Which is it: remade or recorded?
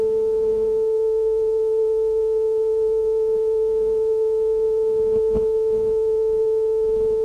remade